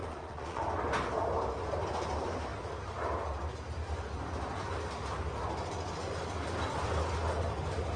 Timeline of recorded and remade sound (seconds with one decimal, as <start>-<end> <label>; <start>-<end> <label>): 0.0-0.6 remade; 0.6-8.0 recorded